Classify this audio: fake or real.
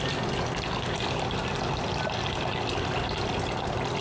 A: real